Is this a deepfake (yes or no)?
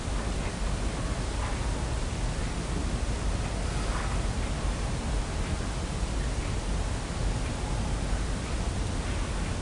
no